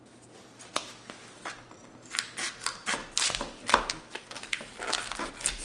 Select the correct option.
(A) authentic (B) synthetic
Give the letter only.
A